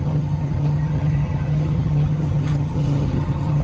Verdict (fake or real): fake